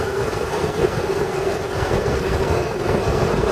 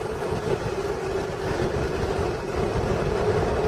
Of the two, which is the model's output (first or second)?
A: first